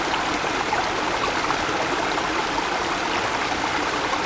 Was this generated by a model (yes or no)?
no